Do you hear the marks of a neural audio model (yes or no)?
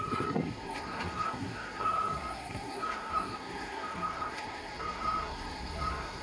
yes